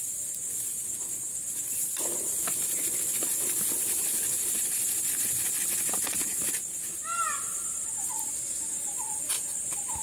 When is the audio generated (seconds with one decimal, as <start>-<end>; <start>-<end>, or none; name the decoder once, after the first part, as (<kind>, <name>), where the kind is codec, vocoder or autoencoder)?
3.3-4.9 (vocoder, BigVGAN v2)